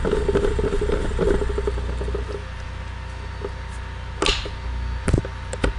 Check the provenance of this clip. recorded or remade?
recorded